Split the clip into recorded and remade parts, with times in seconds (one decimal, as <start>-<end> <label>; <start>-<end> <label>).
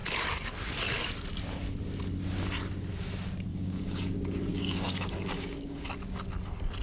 0.0-3.5 recorded; 3.5-4.1 remade; 4.1-4.5 recorded; 4.5-5.9 remade; 5.9-6.8 recorded